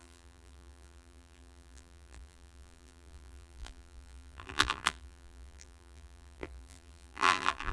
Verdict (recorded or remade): remade